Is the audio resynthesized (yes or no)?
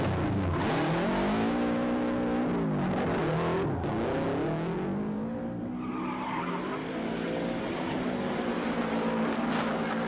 no